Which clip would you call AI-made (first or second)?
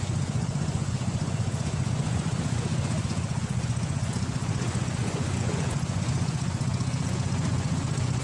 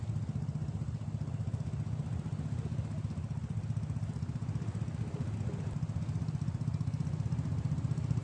first